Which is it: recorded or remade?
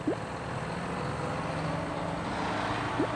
recorded